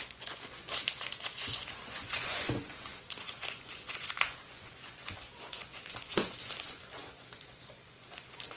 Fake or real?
fake